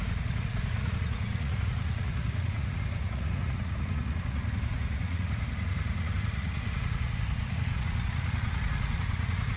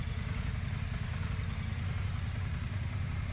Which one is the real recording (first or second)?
second